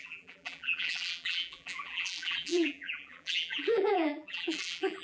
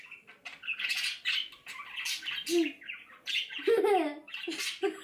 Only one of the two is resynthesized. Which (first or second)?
first